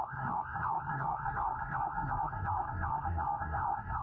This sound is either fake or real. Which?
fake